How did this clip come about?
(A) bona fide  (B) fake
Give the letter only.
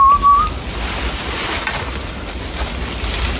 A